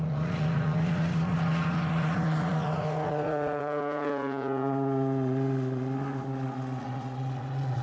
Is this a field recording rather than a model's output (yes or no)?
no